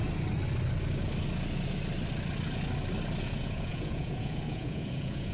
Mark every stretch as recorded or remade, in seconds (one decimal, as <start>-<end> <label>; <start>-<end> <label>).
0.0-3.2 recorded; 3.2-5.3 remade